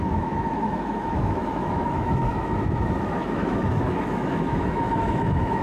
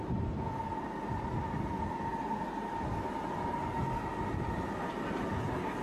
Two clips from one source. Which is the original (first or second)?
second